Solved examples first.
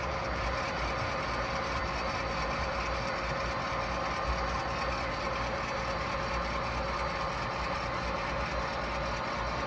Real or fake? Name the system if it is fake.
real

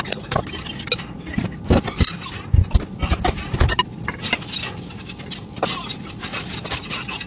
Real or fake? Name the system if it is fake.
real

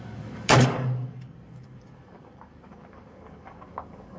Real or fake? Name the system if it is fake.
fake, codec, DAC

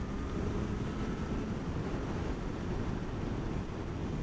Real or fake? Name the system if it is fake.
real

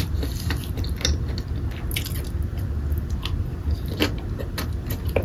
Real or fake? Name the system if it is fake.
real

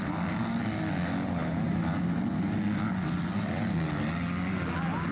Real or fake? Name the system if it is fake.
real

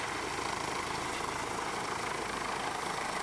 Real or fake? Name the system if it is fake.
real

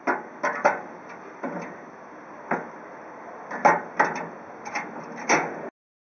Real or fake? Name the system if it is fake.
real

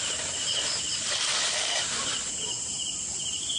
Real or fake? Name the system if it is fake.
real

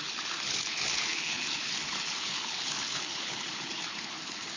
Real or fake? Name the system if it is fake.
fake, codec, HILCodec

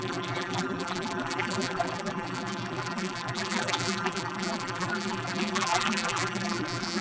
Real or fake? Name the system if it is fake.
fake, vocoder, BigVGAN v2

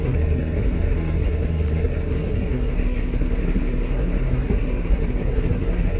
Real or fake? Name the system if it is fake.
fake, codec, SNAC